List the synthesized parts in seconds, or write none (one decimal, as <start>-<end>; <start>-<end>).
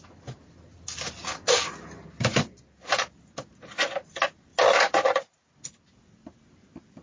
2.3-3.0